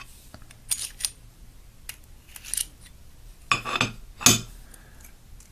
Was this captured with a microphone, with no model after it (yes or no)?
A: yes